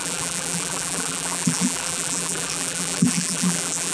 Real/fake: fake